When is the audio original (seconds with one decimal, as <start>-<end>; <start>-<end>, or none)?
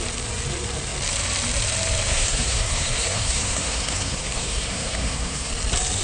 0.0-2.1; 5.5-6.0